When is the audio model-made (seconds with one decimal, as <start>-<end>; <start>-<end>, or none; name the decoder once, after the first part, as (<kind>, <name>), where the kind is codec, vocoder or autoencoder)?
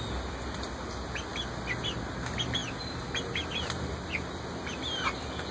none